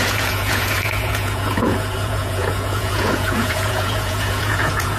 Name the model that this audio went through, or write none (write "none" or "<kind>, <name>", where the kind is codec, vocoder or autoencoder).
vocoder, Vocos